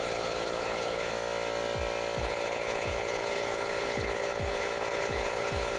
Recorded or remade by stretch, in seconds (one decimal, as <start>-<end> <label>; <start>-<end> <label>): 0.0-1.1 remade; 1.1-2.2 recorded; 2.2-5.8 remade